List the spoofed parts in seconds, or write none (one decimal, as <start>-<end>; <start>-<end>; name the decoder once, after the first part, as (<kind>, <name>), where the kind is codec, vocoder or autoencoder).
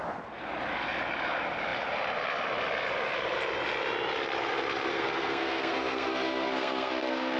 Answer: 4.9-7.4 (codec, SNAC)